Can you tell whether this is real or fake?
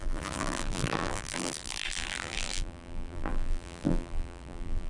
fake